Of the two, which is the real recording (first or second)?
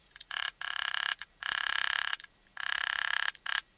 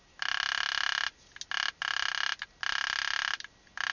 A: second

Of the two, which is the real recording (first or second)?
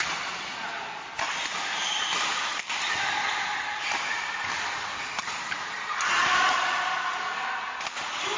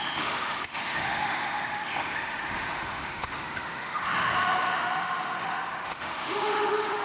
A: first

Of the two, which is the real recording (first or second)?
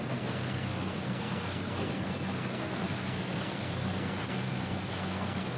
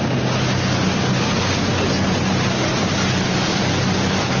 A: second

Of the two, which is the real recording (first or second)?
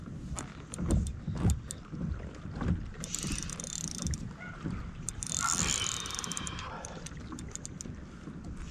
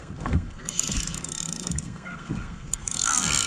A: first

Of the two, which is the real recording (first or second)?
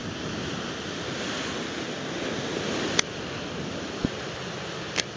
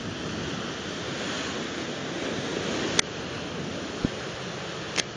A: second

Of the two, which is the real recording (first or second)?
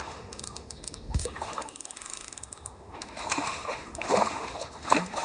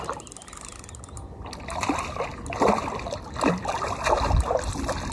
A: second